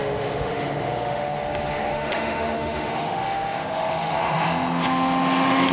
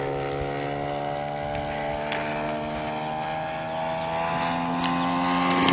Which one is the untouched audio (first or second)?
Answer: second